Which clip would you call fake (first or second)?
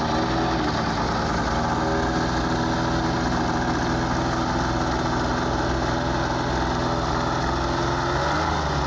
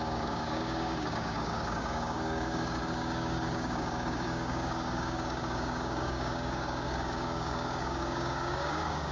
second